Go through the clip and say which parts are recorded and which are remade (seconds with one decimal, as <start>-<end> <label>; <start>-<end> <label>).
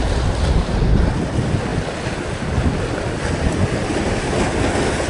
0.0-5.1 recorded